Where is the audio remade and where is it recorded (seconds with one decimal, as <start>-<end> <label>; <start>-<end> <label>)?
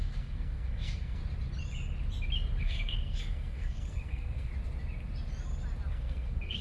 0.0-1.2 remade; 1.2-2.6 recorded; 2.6-4.5 remade; 4.5-5.9 recorded; 5.9-6.6 remade